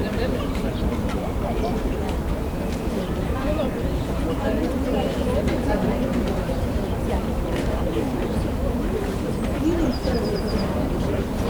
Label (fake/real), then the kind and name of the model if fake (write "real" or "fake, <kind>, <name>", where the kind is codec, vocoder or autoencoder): fake, vocoder, BigVGAN v2